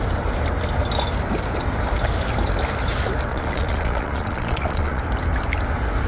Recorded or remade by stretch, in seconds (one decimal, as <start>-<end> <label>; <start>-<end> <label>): 0.0-3.3 recorded; 3.3-5.0 remade; 5.0-6.1 recorded